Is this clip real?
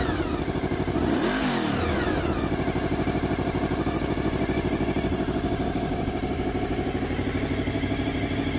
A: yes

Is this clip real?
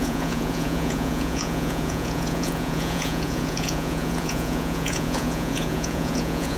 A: no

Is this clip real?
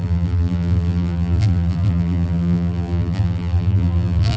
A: no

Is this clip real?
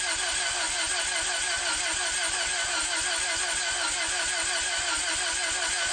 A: yes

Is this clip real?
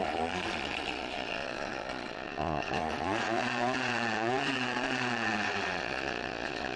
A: no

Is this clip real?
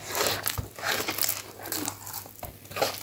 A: yes